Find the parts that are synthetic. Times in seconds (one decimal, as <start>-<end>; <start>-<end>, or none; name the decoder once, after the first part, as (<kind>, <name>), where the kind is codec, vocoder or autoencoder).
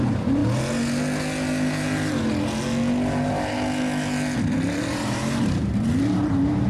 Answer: 0.0-0.4 (vocoder, BigVGAN v2); 4.4-6.7